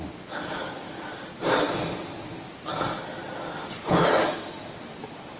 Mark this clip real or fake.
real